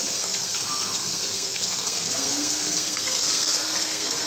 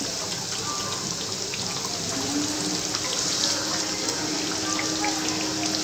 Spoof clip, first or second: first